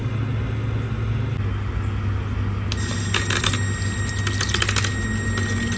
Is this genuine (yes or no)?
yes